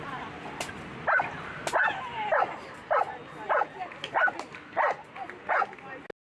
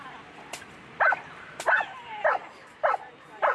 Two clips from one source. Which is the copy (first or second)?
second